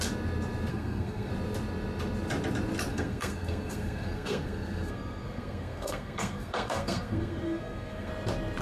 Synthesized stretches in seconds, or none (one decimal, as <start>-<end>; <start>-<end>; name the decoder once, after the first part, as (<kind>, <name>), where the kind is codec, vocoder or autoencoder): 0.7-1.3 (codec, SNAC); 2.9-8.1